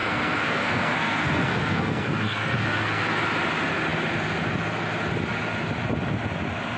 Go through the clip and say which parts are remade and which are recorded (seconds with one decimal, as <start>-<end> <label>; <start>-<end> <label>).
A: 0.0-3.2 remade; 3.2-6.8 recorded